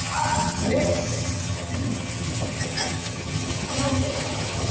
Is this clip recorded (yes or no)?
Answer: no